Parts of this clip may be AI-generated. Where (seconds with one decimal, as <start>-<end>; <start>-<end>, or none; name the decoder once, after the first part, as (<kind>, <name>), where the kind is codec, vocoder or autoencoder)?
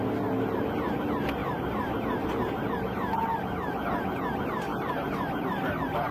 4.7-6.1 (vocoder, BigVGAN v2)